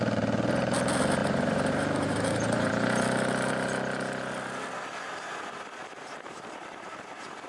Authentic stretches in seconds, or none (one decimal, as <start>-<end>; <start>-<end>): 0.0-1.2; 2.7-5.8